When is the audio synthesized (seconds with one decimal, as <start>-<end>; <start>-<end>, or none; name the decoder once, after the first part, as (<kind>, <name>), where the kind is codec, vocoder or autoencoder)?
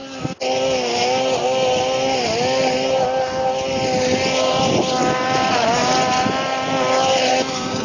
none